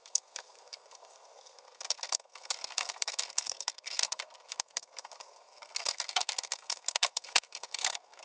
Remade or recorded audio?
remade